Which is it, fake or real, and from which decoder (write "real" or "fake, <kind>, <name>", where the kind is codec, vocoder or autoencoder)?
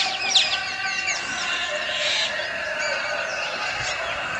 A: real